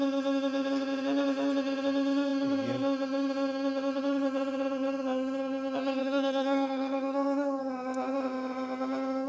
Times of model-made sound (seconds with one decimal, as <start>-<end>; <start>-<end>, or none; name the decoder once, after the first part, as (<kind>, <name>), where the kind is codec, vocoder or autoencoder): 6.0-7.6 (codec, SNAC)

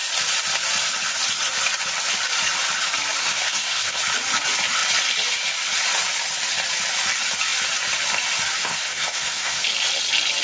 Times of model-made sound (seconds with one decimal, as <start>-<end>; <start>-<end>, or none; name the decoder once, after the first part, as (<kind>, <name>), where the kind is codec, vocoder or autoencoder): 3.2-4.0 (codec, SNAC); 8.6-9.6

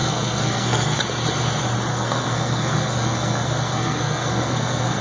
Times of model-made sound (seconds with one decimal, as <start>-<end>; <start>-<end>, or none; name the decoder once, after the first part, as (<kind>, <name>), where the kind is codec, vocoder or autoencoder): 0.0-1.0 (codec, SNAC); 1.9-5.0

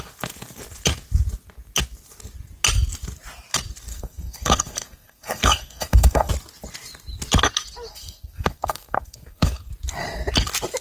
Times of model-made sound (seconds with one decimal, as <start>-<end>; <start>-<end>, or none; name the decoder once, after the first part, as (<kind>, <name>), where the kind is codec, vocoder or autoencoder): 3.9-6.3 (codec, SNAC); 7.9-9.7

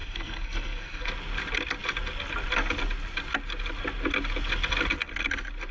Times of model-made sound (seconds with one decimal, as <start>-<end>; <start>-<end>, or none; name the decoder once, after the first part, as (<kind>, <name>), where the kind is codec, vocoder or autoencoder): 0.0-1.1 (codec, SNAC)

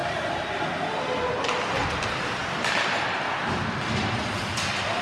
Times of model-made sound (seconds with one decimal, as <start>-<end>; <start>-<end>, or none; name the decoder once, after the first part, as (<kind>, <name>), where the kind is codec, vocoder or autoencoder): none